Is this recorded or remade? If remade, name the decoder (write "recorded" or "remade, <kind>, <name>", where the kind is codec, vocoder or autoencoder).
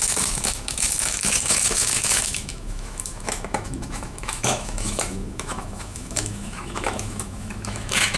remade, autoencoder, DAC-VAE